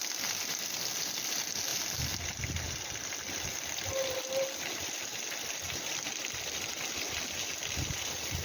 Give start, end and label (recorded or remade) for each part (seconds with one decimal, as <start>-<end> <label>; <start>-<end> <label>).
0.0-8.4 recorded